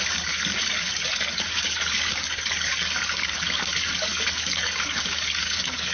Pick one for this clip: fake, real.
fake